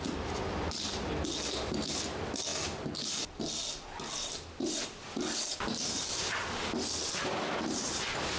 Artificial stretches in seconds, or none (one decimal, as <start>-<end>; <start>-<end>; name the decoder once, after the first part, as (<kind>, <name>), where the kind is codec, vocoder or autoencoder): none